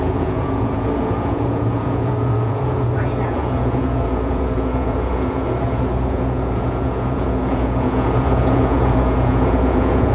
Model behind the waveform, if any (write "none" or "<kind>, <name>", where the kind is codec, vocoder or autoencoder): vocoder, Vocos